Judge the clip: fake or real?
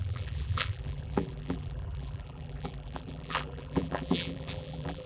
fake